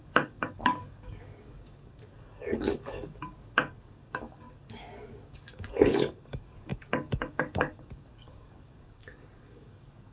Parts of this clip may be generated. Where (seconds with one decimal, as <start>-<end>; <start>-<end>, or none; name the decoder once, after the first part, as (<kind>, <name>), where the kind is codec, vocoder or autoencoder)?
0.0-10.1 (codec, DAC)